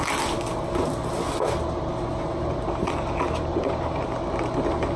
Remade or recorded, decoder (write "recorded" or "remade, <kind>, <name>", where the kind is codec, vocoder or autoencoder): recorded